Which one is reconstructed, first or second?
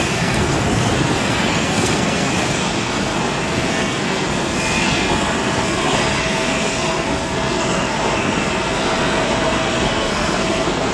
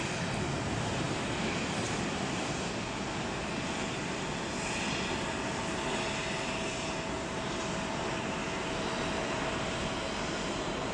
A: first